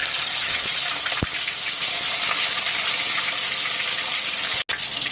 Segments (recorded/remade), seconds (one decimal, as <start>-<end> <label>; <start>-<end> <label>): 0.0-0.7 remade; 0.7-5.1 recorded